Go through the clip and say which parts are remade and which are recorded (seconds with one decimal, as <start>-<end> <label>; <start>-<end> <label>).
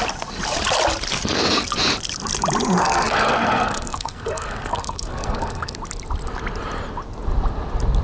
0.0-2.8 recorded; 2.8-5.7 remade; 5.7-8.0 recorded